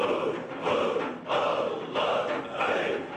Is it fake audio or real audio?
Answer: real